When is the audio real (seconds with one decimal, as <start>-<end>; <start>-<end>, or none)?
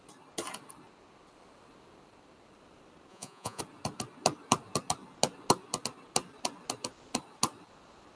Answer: 0.0-3.1; 3.6-8.2